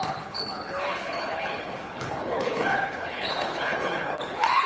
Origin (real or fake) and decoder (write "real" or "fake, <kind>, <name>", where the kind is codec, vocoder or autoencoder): fake, codec, HILCodec